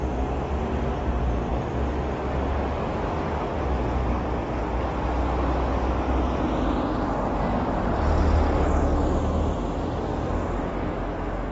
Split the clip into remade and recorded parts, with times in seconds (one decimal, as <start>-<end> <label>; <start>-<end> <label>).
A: 0.0-11.5 recorded